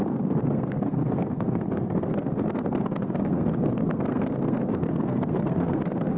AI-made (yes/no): yes